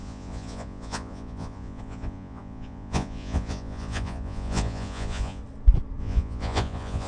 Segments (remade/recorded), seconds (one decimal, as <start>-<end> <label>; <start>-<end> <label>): 0.0-5.4 remade; 5.4-6.0 recorded; 6.0-7.1 remade